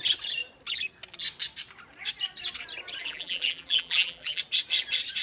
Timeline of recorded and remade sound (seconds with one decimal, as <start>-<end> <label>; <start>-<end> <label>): 0.0-3.0 recorded; 3.0-4.4 remade; 4.4-5.2 recorded